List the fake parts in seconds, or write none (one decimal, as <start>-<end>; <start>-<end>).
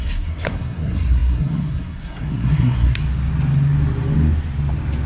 0.0-3.0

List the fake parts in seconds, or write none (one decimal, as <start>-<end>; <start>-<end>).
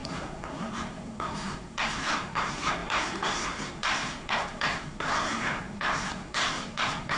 0.0-7.2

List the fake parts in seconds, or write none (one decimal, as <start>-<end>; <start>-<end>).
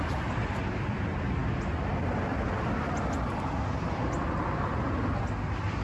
none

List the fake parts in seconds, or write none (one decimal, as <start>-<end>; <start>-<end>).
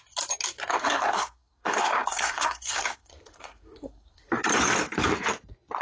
0.8-4.3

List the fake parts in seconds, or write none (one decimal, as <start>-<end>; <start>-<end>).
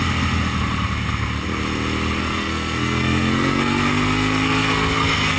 2.2-5.4